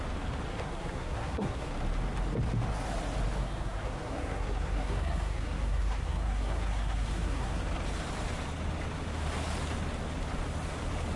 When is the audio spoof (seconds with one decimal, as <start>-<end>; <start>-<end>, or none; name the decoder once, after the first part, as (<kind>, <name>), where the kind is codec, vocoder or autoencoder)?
0.5-1.7 (codec, SNAC); 3.4-7.6